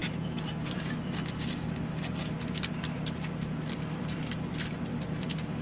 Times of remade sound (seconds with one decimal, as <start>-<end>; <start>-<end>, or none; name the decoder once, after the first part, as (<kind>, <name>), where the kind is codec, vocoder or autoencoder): none